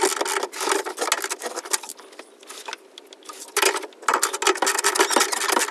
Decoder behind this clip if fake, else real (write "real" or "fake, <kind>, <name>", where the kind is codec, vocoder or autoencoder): real